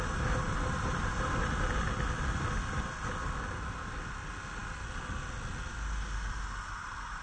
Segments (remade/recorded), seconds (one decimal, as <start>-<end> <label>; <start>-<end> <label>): 0.0-7.2 recorded